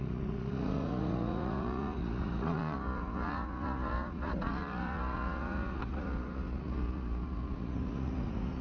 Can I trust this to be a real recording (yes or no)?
no